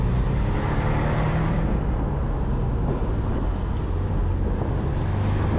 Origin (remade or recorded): recorded